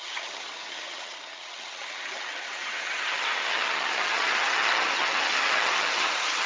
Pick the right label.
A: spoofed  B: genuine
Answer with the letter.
A